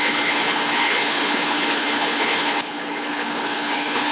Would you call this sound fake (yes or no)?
yes